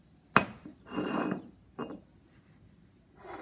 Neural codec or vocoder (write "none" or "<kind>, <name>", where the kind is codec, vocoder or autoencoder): none